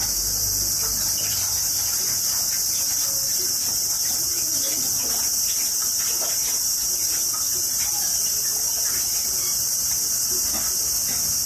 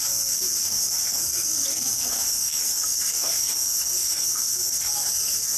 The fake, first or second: second